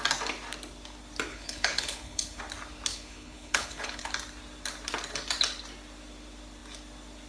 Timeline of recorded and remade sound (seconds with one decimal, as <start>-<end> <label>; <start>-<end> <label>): 0.0-1.3 recorded; 1.3-2.4 remade; 2.4-2.9 recorded; 2.9-4.1 remade; 4.1-7.3 recorded